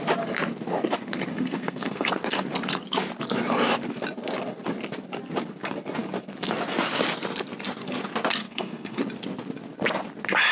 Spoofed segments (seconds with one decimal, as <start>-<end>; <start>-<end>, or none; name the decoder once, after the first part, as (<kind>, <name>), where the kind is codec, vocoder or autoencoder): 1.3-2.1 (codec, SNAC); 8.4-9.0